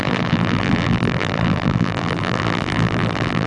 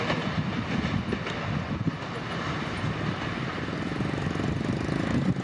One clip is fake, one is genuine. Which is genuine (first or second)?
second